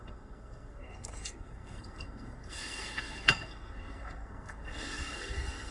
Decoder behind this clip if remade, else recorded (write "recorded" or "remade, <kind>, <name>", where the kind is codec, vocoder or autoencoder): remade, codec, SNAC